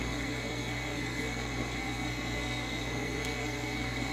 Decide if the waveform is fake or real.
fake